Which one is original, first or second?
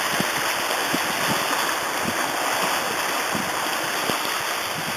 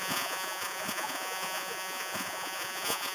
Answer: first